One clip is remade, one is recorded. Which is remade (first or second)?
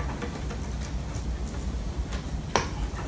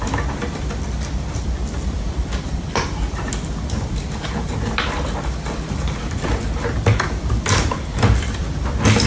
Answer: second